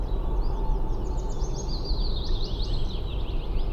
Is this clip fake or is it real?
real